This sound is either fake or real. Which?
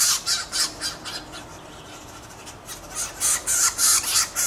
real